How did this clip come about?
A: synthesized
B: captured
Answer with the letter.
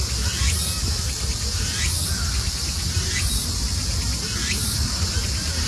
B